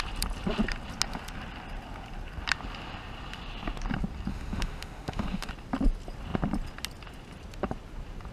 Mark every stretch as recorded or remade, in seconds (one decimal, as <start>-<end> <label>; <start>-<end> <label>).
0.0-4.3 recorded; 4.3-5.5 remade; 5.5-8.3 recorded